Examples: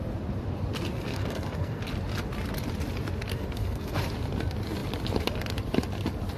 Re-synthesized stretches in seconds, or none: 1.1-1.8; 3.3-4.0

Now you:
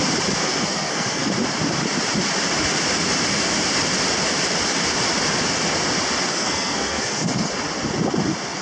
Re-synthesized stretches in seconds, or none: 0.4-1.3; 6.3-7.5

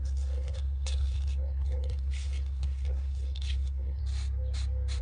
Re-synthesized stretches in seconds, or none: 0.0-4.0

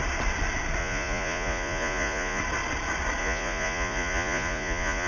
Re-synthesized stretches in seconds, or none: 0.8-2.4; 3.2-5.1

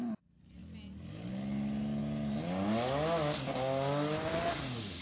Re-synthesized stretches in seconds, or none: none

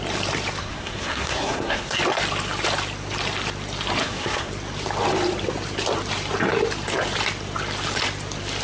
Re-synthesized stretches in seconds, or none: 0.6-2.0; 4.0-4.5

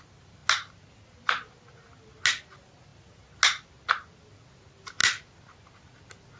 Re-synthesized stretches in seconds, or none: none

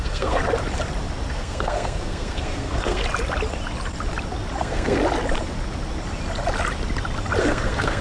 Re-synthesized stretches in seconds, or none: 0.0-0.4; 1.3-3.0; 4.6-5.0; 7.4-8.0